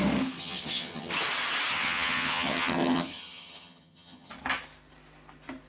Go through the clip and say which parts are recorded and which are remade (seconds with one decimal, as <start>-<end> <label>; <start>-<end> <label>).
0.0-0.4 recorded; 0.4-1.1 remade; 1.1-1.7 recorded; 1.7-4.3 remade; 4.3-5.7 recorded